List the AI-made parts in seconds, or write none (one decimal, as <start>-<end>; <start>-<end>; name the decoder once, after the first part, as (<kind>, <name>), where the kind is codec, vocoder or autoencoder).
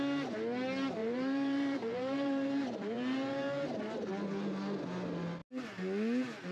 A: 1.0-4.1 (vocoder, BigVGAN v2)